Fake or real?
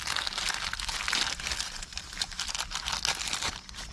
real